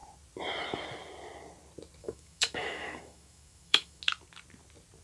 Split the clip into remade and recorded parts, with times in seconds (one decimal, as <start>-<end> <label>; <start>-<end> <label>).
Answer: 0.0-2.0 recorded; 2.0-4.0 remade; 4.0-5.0 recorded